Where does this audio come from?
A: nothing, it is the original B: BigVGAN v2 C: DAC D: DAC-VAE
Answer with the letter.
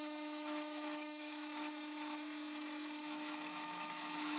D